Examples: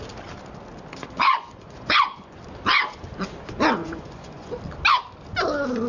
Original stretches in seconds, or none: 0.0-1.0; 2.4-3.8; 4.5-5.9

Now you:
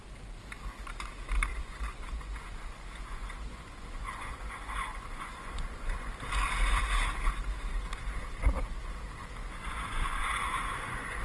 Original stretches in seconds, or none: 0.0-1.5; 6.1-9.4

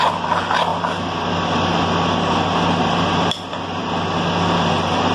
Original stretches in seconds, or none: 0.0-5.1

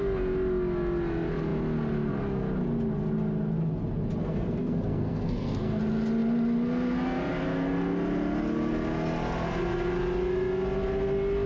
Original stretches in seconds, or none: 0.0-4.2; 5.8-11.5

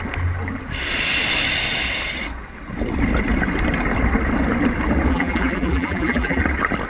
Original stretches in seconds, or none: 0.0-5.1; 6.4-6.9